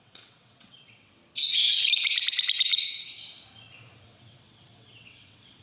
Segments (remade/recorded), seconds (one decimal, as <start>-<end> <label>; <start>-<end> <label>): 0.0-1.2 remade; 1.2-4.0 recorded; 4.0-5.6 remade